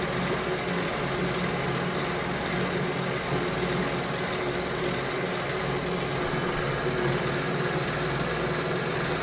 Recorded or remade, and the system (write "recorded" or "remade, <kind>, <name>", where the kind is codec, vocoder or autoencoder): recorded